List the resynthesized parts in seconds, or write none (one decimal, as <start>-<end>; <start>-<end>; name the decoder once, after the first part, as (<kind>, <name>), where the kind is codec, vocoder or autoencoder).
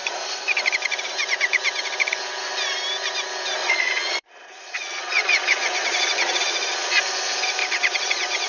3.6-7.0 (vocoder, Vocos); 7.6-8.5